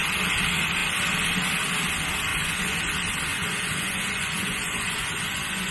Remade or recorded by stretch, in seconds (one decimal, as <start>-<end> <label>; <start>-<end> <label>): 0.0-2.3 recorded; 2.3-2.8 remade; 2.8-3.3 recorded; 3.3-5.7 remade